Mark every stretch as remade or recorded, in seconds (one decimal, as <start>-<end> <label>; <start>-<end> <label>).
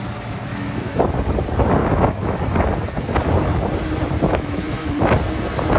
0.0-0.5 recorded; 0.5-1.0 remade; 1.0-1.8 recorded; 1.8-2.4 remade; 2.4-4.3 recorded; 4.3-5.0 remade; 5.0-5.8 recorded